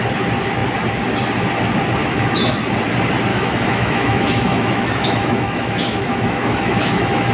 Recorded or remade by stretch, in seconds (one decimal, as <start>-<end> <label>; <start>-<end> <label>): 0.0-2.0 recorded; 2.0-2.6 remade; 2.6-3.3 recorded; 3.3-7.3 remade

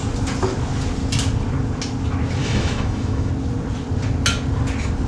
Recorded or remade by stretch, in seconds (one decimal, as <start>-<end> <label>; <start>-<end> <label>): 0.0-2.4 recorded; 2.4-3.3 remade; 3.3-5.1 recorded